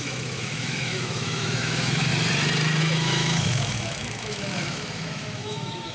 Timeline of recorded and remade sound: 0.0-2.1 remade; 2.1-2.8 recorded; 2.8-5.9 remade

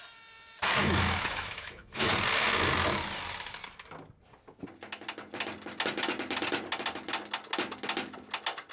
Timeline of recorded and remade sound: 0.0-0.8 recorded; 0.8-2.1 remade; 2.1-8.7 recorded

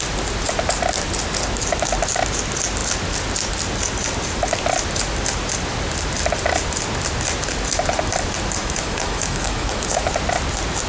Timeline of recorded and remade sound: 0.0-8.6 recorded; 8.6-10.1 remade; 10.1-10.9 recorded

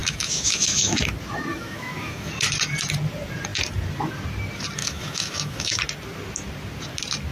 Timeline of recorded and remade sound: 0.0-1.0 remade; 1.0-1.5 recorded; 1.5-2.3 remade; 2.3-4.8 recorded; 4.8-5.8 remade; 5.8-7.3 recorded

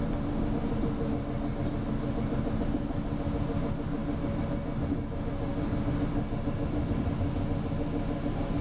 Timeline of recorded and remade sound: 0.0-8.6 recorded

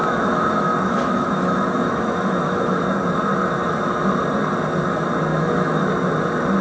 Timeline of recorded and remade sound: 0.0-2.8 remade; 2.8-5.3 recorded; 5.3-5.9 remade; 5.9-6.6 recorded

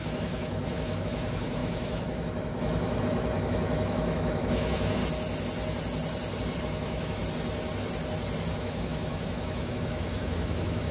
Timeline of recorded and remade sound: 0.0-5.0 remade; 5.0-6.6 recorded; 6.6-7.2 remade; 7.2-8.5 recorded; 8.5-10.9 remade

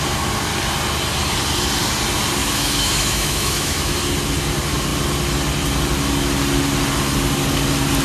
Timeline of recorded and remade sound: 0.0-2.4 recorded; 2.4-4.0 remade; 4.0-8.0 recorded